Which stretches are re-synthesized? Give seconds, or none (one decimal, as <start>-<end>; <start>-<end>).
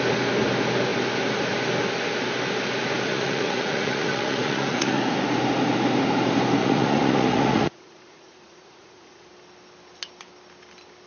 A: 3.1-5.0; 6.6-9.3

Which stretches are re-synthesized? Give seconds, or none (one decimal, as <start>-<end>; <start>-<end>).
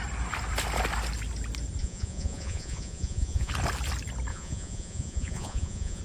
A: 1.8-3.5; 4.3-6.0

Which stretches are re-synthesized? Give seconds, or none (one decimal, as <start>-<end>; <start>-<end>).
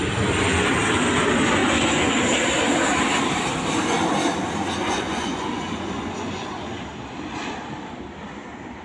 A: 1.6-2.1; 4.8-6.7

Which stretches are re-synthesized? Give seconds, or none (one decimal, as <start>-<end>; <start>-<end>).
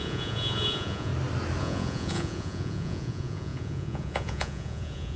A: 0.0-1.1; 1.6-5.2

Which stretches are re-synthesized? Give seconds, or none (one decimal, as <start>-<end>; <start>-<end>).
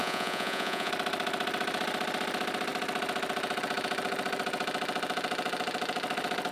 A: 0.0-0.9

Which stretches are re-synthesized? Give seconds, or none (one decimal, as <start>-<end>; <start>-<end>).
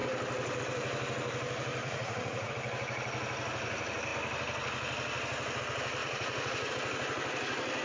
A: 1.8-2.5; 6.0-6.7